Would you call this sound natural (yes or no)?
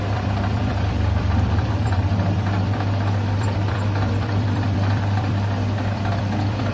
no